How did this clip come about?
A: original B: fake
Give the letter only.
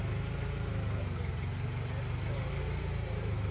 A